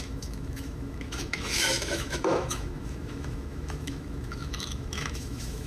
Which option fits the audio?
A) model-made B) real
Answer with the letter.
A